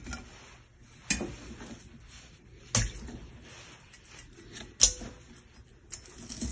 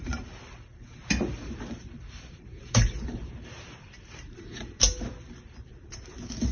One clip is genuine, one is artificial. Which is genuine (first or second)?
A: first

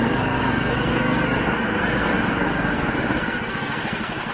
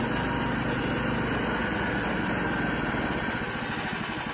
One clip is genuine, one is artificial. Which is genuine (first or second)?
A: second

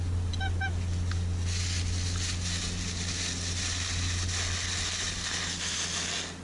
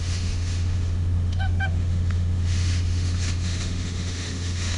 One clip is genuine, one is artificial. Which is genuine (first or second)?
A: first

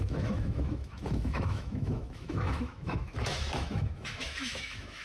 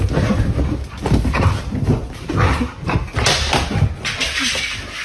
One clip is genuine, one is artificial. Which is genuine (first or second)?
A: second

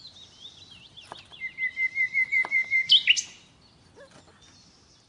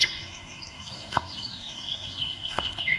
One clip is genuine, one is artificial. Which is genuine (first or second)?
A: first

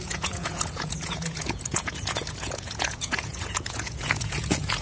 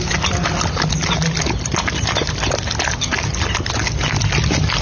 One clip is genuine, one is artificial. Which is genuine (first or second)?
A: second